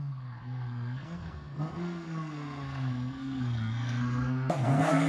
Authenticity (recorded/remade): remade